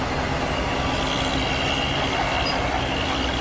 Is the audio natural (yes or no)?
yes